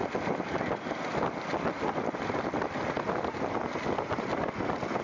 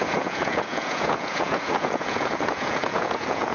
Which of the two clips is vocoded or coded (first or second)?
second